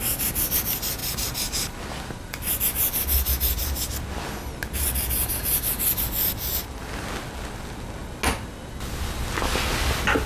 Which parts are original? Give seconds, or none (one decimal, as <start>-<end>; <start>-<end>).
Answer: 0.0-1.0; 2.5-10.3